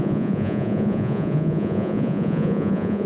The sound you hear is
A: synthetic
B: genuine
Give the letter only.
A